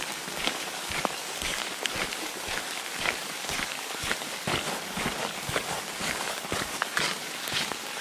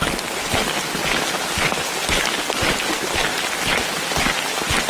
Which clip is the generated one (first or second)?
first